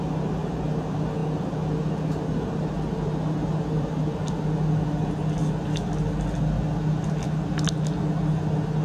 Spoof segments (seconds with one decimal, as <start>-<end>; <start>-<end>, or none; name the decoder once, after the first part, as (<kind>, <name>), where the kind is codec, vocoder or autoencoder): 1.2-4.1 (vocoder, BigVGAN v2)